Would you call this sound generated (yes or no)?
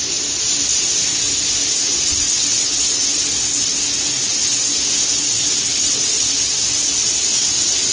no